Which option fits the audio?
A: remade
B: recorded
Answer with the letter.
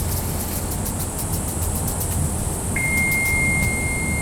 B